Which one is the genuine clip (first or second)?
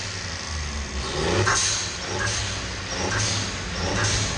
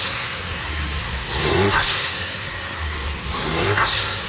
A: first